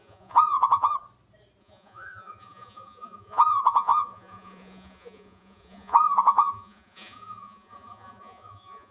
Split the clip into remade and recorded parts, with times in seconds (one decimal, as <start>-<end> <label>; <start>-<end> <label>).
0.0-0.9 remade; 0.9-1.6 recorded; 1.6-8.9 remade